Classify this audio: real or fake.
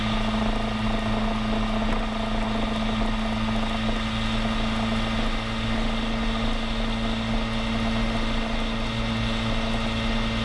real